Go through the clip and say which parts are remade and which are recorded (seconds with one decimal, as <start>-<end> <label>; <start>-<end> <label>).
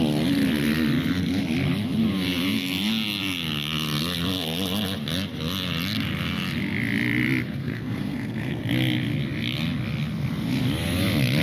0.0-7.6 recorded; 7.6-8.6 remade; 8.6-11.4 recorded